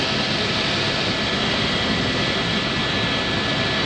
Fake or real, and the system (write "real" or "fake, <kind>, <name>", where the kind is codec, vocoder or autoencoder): real